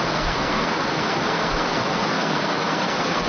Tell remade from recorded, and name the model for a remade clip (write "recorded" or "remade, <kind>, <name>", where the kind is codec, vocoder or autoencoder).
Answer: remade, codec, SNAC